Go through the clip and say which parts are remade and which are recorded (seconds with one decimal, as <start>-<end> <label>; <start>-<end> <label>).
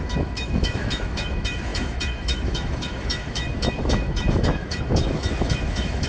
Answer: 0.0-6.1 remade